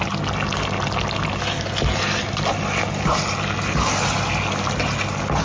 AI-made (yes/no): no